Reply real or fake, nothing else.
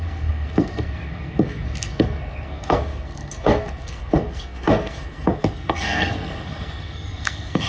fake